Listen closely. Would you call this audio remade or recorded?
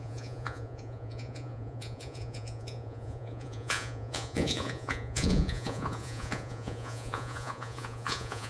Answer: remade